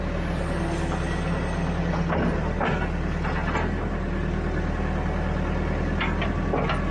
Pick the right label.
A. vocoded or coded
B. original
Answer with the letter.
B